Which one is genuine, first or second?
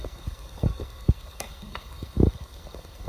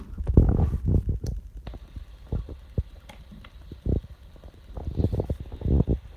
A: second